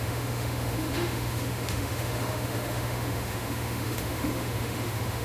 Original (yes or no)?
no